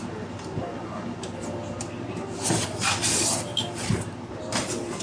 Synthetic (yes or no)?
no